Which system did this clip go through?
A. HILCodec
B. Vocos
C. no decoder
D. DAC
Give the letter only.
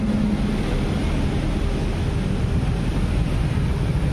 C